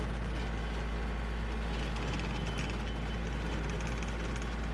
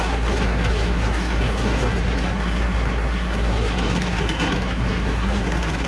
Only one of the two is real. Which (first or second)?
first